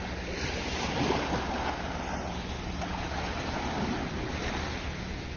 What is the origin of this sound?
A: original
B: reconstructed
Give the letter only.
A